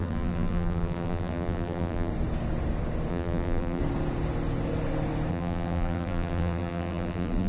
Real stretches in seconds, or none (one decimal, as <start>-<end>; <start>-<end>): 2.1-3.1; 3.8-5.3